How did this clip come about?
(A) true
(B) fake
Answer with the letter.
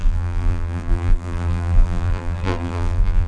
B